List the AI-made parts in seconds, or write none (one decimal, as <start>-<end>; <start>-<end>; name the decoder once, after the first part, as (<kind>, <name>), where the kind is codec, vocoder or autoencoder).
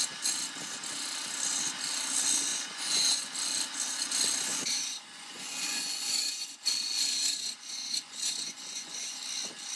2.5-3.3 (vocoder, Vocos); 4.5-9.2